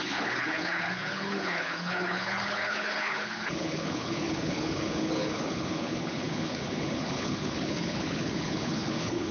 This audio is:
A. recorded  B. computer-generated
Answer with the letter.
B